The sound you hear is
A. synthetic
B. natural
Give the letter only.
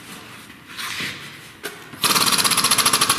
B